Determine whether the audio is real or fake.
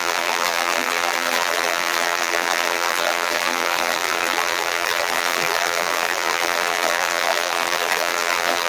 fake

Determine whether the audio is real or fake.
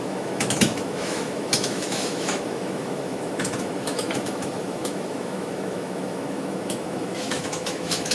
fake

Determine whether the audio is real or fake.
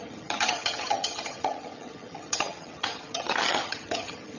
fake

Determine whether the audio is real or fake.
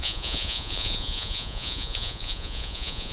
fake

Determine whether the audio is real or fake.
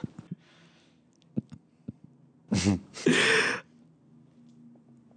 real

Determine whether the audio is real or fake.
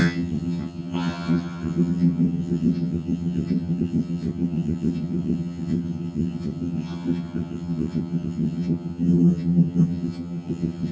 fake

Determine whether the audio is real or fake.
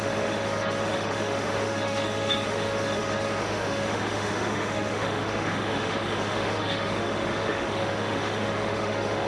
fake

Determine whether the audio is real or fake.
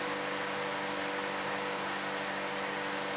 real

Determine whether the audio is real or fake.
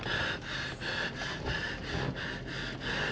real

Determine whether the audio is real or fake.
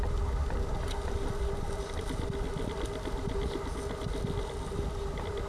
real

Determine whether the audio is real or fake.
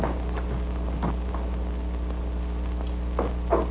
real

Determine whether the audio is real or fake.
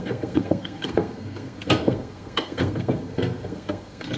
fake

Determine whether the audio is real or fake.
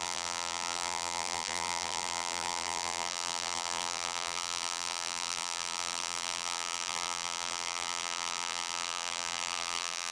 fake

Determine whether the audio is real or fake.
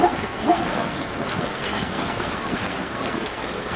fake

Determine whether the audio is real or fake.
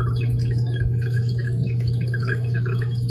fake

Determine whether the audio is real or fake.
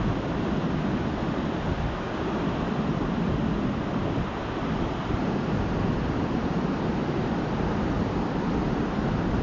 fake